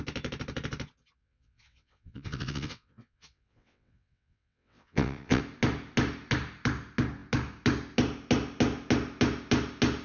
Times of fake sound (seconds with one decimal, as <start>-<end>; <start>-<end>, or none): 1.2-5.4